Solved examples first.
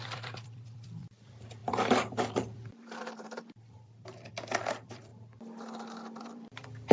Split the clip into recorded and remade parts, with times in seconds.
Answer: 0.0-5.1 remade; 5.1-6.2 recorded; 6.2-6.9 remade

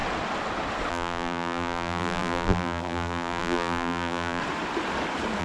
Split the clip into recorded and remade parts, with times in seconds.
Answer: 0.0-0.9 recorded; 0.9-4.4 remade; 4.4-5.4 recorded

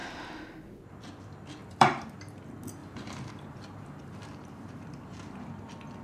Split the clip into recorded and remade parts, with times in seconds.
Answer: 0.0-1.6 recorded; 1.6-2.4 remade; 2.4-2.8 recorded; 2.8-5.5 remade; 5.5-6.0 recorded

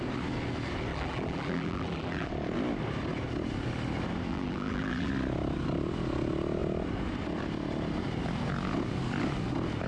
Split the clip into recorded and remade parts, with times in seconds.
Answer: 0.0-0.9 recorded; 0.9-2.3 remade; 2.3-4.3 recorded; 4.3-5.1 remade; 5.1-9.9 recorded